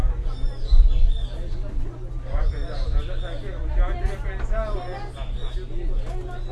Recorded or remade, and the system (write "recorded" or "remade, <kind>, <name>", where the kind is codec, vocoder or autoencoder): recorded